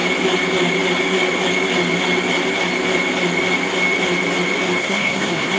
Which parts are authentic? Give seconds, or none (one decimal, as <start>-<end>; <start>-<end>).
0.0-4.8